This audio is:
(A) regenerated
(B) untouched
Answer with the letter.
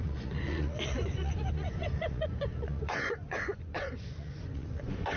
A